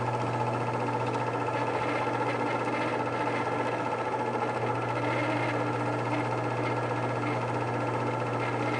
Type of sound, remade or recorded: recorded